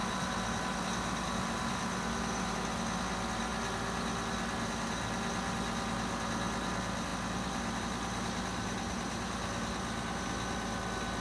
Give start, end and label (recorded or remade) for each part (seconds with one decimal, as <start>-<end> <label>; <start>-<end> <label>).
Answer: 0.0-11.2 recorded